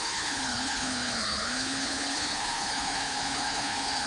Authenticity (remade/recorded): remade